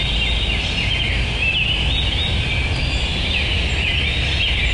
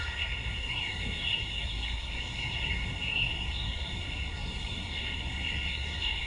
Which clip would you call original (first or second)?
first